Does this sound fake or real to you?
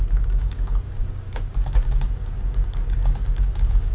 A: fake